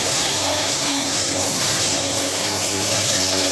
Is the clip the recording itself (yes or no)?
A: no